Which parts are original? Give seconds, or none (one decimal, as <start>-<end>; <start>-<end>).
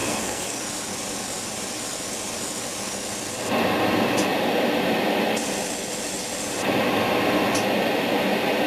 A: 0.6-8.7